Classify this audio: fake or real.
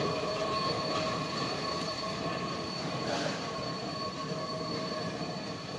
fake